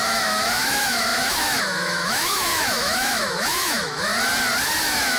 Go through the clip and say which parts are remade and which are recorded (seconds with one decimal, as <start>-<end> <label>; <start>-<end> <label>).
0.0-4.1 remade; 4.1-4.8 recorded; 4.8-5.2 remade